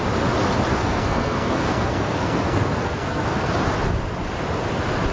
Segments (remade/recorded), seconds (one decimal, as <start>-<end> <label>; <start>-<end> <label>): 0.0-0.7 recorded; 0.7-3.5 remade; 3.5-5.1 recorded